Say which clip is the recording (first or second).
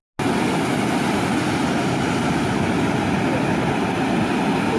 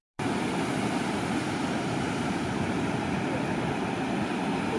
first